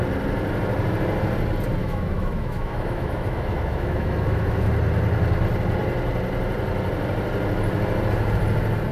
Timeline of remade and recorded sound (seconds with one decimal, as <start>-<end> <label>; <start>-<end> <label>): 0.0-1.8 recorded; 1.8-4.7 remade; 4.7-8.9 recorded